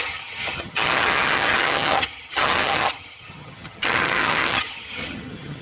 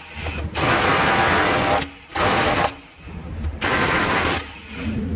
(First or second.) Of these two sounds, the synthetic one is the first